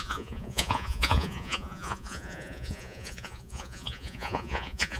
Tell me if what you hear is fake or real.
fake